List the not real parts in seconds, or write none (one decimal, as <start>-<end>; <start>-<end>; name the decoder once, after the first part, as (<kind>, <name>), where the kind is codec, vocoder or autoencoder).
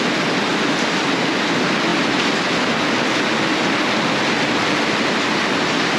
0.5-1.0 (vocoder, BigVGAN v2)